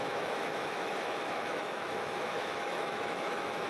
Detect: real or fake fake